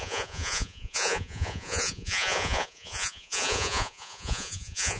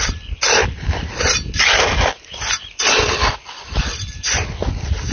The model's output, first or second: first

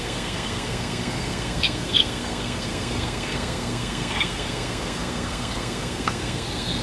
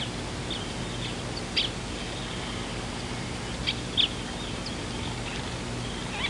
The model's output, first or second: first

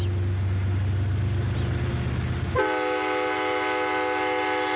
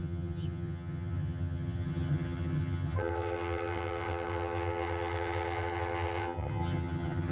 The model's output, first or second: second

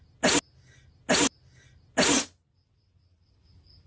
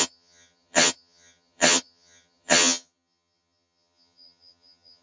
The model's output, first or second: second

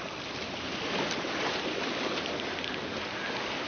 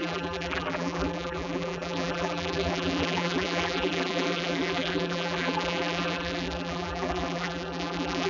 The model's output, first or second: second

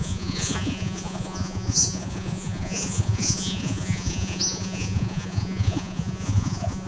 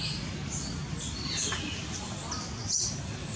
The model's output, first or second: first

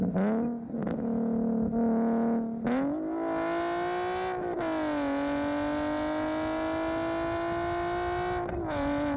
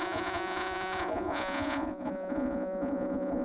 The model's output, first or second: second